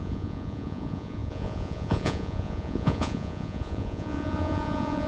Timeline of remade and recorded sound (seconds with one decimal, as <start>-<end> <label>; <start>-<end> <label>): 0.0-5.1 remade